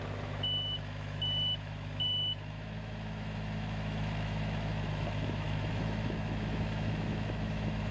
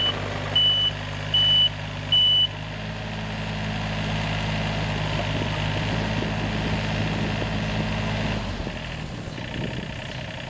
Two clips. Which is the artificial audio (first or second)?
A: first